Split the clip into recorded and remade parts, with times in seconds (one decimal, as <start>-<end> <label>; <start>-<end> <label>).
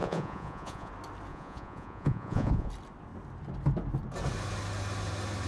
0.0-0.9 remade; 0.9-1.3 recorded; 1.3-2.7 remade; 2.7-5.5 recorded